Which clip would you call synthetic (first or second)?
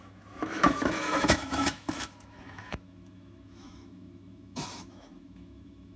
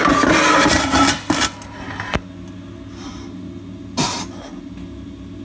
first